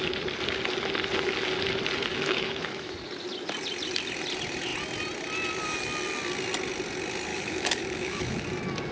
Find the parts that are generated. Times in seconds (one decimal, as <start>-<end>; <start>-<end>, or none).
2.1-2.9; 7.3-8.4